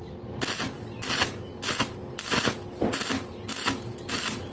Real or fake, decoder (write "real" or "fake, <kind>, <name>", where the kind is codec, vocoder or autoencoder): real